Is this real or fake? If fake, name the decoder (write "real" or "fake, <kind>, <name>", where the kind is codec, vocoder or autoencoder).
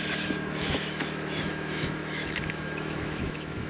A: fake, autoencoder, DAC-VAE